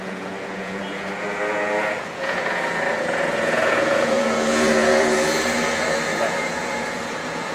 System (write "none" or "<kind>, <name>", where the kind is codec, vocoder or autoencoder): vocoder, Vocos